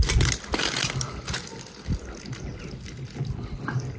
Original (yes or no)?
yes